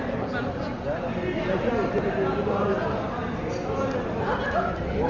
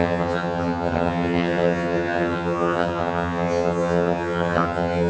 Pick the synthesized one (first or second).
second